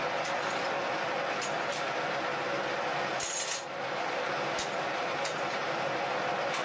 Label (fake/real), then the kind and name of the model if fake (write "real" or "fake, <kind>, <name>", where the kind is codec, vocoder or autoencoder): real